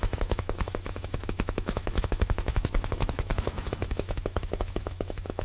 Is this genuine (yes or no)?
no